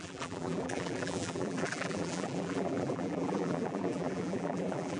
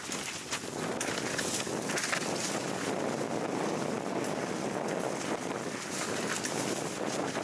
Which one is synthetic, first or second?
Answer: first